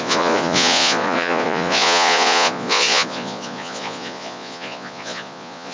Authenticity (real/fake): fake